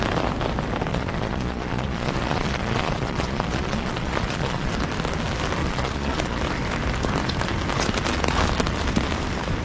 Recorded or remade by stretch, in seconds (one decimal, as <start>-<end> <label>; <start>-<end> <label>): 0.0-0.9 recorded; 0.9-4.7 remade; 4.7-5.6 recorded; 5.6-6.4 remade; 6.4-9.6 recorded